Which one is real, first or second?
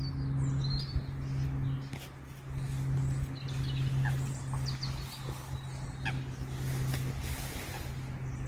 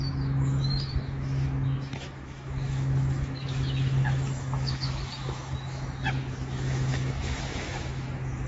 first